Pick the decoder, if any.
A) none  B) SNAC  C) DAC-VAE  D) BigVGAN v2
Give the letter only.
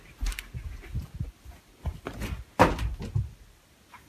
A